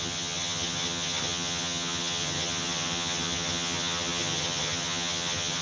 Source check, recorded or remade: remade